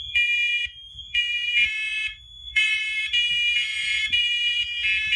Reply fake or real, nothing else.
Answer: fake